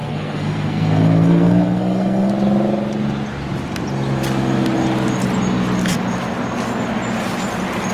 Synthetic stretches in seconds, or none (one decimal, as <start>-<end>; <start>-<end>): 0.0-2.3